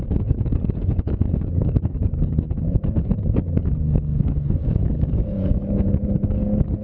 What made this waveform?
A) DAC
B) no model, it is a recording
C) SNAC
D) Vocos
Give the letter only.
A